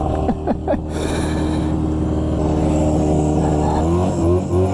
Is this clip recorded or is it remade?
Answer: recorded